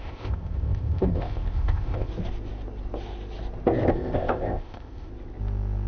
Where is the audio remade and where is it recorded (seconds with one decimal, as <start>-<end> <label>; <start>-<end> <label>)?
0.0-2.1 remade; 2.1-3.9 recorded; 3.9-5.1 remade; 5.1-5.9 recorded

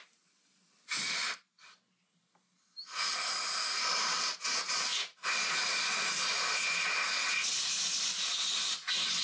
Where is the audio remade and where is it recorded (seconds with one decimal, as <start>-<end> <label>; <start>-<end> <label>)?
0.0-9.2 recorded

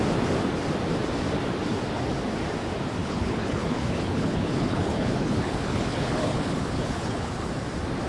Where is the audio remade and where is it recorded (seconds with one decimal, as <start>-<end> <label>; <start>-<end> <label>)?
0.0-3.0 recorded; 3.0-7.5 remade; 7.5-8.1 recorded

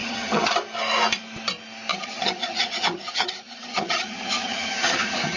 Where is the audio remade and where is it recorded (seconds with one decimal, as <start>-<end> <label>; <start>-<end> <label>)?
0.0-0.5 remade; 0.5-1.9 recorded; 1.9-5.4 remade